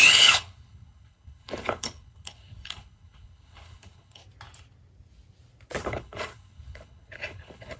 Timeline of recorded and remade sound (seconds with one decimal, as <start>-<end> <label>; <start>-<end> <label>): 0.0-4.2 remade; 4.2-5.8 recorded; 5.8-7.8 remade